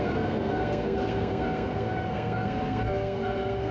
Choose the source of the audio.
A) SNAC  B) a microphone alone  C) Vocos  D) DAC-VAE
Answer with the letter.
A